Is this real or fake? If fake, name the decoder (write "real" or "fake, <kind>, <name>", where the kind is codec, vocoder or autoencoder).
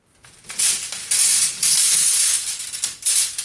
real